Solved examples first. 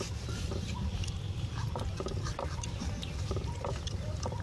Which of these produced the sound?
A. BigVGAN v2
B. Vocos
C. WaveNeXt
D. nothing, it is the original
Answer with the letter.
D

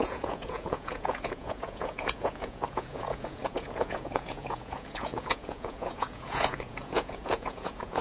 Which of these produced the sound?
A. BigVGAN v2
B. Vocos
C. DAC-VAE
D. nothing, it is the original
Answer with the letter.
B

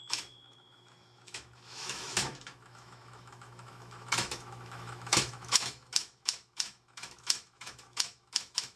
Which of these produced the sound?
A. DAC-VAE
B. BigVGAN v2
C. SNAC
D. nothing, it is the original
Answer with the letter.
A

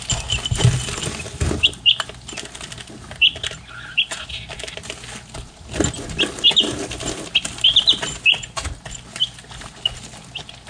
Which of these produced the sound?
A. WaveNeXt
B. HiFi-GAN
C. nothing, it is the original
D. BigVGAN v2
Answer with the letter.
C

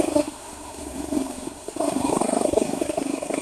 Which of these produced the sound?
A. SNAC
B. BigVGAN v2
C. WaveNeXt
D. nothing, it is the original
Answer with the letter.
A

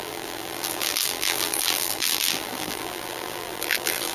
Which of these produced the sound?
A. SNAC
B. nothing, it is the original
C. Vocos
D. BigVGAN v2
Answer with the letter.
D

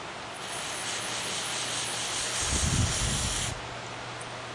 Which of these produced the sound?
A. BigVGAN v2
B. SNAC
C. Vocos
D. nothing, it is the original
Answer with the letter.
D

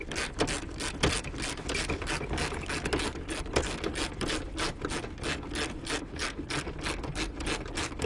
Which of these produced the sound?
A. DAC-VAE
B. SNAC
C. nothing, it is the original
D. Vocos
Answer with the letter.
C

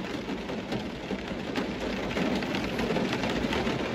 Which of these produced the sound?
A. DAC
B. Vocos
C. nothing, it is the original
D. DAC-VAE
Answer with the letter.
C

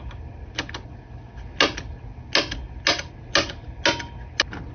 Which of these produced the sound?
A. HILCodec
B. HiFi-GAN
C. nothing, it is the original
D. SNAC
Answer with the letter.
C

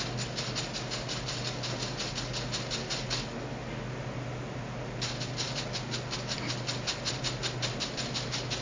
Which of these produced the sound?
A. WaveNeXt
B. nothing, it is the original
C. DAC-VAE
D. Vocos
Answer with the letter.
B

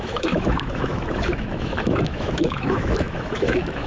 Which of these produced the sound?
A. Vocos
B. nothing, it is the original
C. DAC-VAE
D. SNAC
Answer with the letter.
C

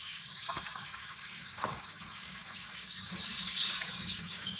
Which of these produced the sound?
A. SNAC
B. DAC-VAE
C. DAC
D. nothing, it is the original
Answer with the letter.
C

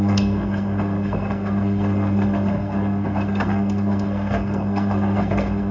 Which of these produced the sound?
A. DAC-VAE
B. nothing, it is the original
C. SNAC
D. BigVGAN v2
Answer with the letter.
C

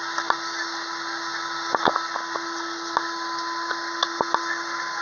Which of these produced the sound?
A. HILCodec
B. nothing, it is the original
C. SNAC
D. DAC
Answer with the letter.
B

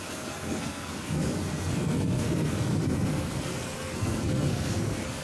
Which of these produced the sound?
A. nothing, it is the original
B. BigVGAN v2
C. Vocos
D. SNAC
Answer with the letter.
D